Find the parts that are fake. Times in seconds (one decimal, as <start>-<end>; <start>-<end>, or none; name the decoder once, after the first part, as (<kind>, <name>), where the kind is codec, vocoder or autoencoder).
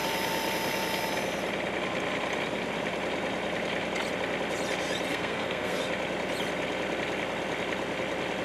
5.1-5.8 (codec, SNAC)